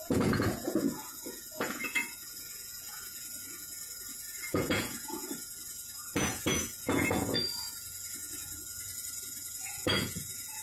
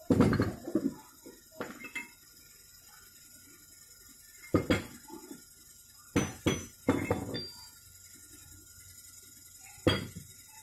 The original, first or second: second